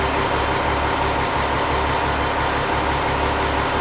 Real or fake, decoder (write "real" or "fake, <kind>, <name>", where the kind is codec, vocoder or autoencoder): real